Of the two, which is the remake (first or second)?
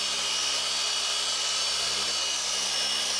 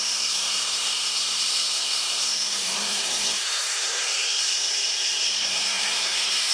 second